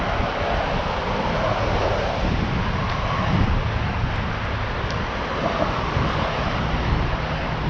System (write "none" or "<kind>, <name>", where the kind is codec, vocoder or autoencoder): none